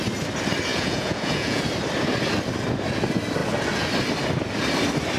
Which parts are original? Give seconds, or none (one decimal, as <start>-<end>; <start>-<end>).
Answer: 0.0-0.7; 1.6-5.2